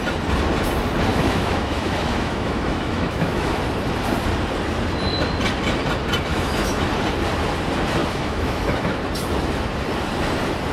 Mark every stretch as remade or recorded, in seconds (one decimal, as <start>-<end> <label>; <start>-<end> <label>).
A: 0.0-1.1 recorded; 1.1-3.6 remade; 3.6-6.3 recorded; 6.3-6.9 remade; 6.9-8.0 recorded; 8.0-9.0 remade; 9.0-10.7 recorded